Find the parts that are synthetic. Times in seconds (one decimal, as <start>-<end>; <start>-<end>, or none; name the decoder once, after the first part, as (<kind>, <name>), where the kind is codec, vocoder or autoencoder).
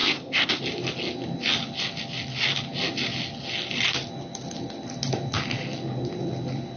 0.0-0.6 (codec, ZipCodec)